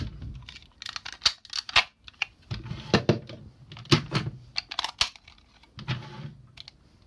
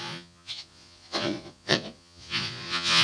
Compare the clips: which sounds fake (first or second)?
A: second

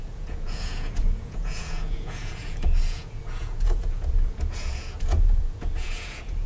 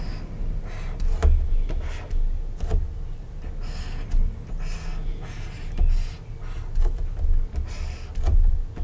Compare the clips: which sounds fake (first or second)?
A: first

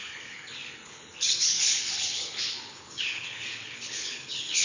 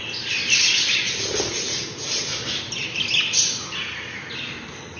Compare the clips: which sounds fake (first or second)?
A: first